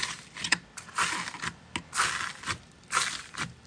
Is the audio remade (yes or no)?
no